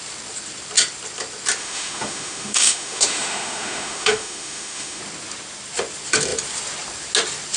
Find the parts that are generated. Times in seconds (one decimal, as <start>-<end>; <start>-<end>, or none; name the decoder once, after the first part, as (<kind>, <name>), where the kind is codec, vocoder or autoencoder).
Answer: 1.6-5.0 (autoencoder, DAC-VAE)